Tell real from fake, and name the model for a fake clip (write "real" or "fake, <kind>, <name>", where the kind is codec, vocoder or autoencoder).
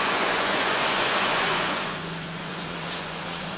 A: fake, vocoder, Vocos